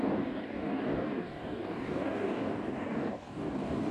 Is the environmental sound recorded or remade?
remade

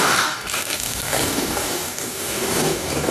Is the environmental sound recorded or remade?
remade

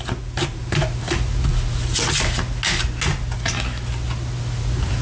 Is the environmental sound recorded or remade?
recorded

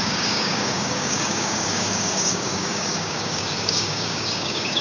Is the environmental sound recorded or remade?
remade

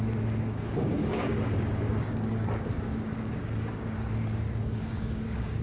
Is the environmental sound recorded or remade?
remade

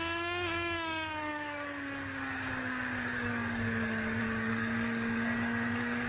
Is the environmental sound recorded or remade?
remade